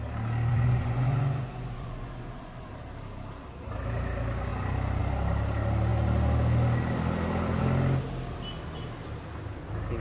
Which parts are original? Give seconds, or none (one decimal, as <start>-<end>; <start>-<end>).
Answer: 0.0-0.5; 2.7-10.0

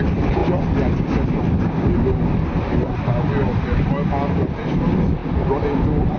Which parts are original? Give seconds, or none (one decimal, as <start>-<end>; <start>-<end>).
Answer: 0.0-6.2

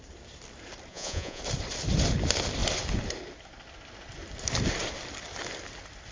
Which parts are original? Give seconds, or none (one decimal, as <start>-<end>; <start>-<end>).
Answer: 0.0-0.9; 1.4-6.1

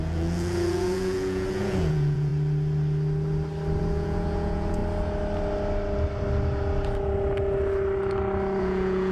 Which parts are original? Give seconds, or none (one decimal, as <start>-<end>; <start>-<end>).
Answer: 2.3-3.8; 4.8-8.6